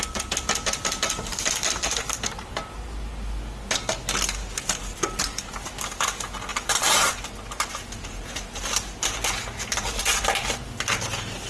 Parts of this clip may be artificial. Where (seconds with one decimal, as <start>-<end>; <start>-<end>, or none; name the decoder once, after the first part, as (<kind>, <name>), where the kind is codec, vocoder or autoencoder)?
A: none